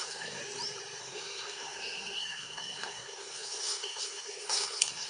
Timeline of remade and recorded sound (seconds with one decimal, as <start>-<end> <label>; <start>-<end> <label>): 0.0-0.4 remade; 0.4-1.0 recorded; 1.0-5.1 remade